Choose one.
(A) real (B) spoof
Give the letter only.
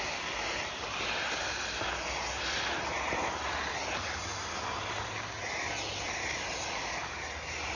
A